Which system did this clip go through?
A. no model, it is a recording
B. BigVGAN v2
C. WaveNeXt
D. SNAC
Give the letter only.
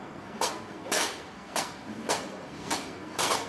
D